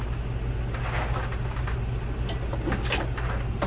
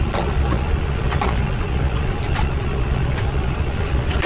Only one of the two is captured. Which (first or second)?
first